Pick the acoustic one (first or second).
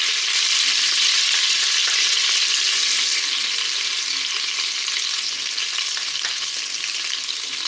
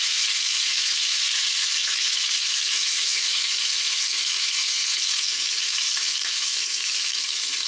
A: first